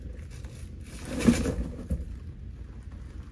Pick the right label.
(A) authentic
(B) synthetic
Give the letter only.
A